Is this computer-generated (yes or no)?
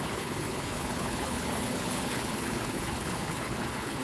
yes